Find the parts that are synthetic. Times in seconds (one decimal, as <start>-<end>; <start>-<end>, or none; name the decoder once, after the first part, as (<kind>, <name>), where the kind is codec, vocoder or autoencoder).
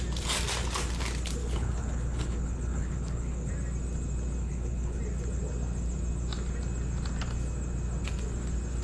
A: 1.4-3.5 (codec, HILCodec); 4.4-5.0